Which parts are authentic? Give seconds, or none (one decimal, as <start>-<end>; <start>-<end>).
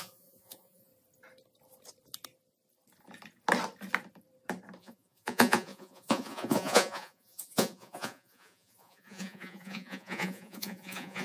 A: 0.9-4.8